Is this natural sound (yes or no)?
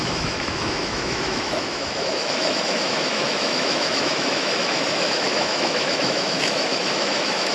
no